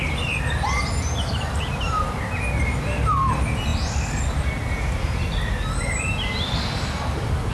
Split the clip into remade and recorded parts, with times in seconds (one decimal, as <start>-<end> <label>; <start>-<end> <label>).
0.0-3.7 recorded; 3.7-4.2 remade; 4.2-7.5 recorded